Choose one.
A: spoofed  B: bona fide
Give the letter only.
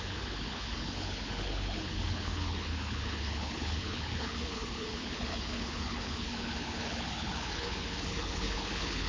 A